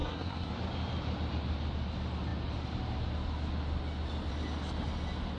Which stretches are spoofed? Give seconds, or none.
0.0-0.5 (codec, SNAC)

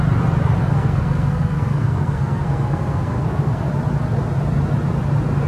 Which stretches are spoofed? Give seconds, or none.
0.6-3.7 (codec, SNAC)

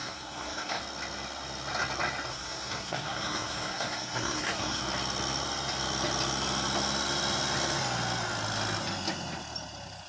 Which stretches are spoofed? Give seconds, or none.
0.0-0.8 (codec, SNAC); 2.3-4.8

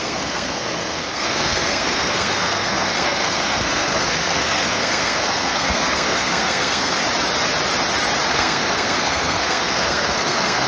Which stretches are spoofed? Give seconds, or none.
0.0-7.0 (codec, SNAC); 8.3-10.7

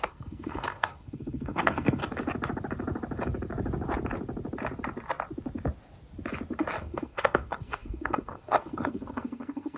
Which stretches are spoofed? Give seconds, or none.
0.0-2.0 (codec, SNAC); 6.8-9.8

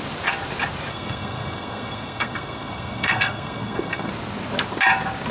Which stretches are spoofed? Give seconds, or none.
0.9-4.1 (codec, SNAC)

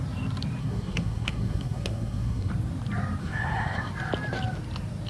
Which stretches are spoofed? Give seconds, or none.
0.6-2.5 (codec, SNAC); 3.2-3.9